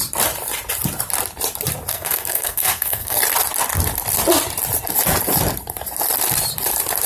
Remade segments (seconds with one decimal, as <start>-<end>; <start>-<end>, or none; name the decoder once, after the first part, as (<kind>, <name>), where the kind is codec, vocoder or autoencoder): 1.9-3.2 (codec, SNAC)